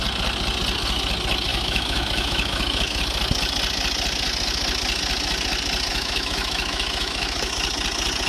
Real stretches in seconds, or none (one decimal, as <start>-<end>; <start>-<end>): 0.0-1.5; 3.0-5.9; 7.5-8.3